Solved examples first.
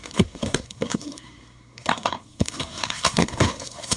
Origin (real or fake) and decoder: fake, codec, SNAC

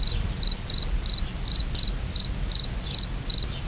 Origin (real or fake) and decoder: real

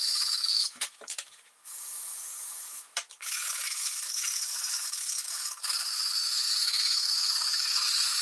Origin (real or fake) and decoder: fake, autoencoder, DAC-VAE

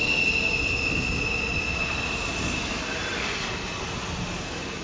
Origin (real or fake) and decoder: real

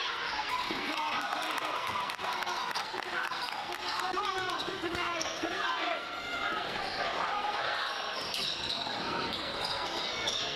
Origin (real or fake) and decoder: fake, codec, SNAC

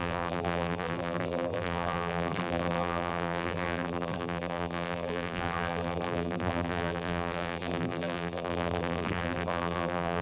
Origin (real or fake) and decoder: fake, vocoder, BigVGAN v2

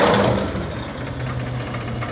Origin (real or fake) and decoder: real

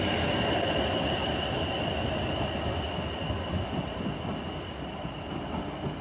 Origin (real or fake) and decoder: real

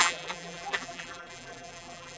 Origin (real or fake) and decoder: fake, vocoder, BigVGAN v2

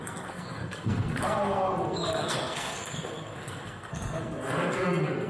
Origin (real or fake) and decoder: fake, codec, SNAC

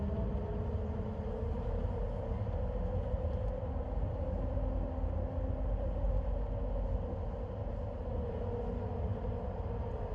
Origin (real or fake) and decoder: real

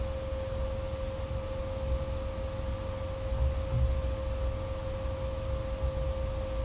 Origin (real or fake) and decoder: real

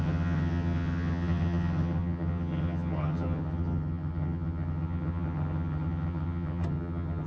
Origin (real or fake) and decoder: fake, vocoder, HiFi-GAN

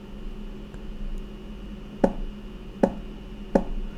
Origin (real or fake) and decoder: real